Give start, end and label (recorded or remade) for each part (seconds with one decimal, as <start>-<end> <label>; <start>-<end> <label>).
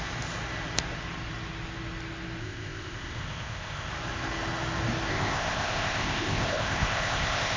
0.0-2.4 recorded; 2.4-3.9 remade; 3.9-5.1 recorded; 5.1-7.6 remade